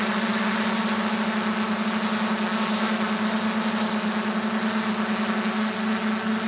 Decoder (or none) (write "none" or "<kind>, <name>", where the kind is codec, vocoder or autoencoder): none